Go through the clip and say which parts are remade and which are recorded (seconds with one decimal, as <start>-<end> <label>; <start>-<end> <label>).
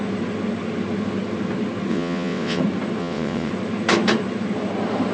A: 0.0-1.9 recorded; 1.9-2.6 remade; 2.6-3.0 recorded; 3.0-3.5 remade; 3.5-5.1 recorded